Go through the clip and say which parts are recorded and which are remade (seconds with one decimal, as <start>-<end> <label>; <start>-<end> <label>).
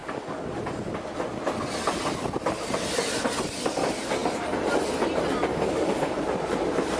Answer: 0.0-0.6 remade; 0.6-5.5 recorded; 5.5-6.2 remade; 6.2-7.0 recorded